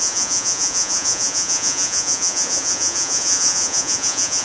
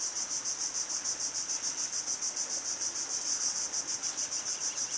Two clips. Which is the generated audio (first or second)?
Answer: first